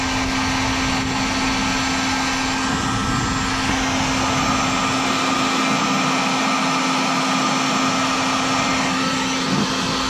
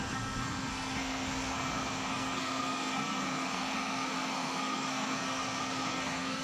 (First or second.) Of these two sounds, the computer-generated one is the second